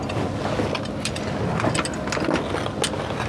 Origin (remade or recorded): recorded